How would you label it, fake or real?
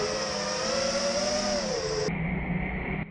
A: real